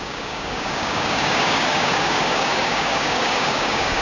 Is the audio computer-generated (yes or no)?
yes